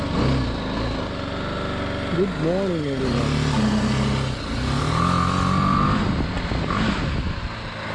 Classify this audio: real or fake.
real